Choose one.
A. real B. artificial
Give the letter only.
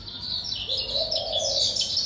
A